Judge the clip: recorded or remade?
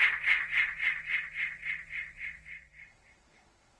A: remade